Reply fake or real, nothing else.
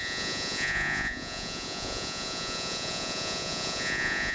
fake